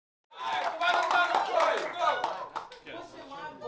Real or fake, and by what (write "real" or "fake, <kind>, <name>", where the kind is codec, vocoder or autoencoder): real